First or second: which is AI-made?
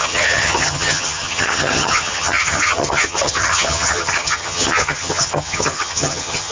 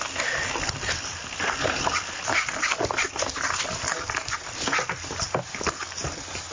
first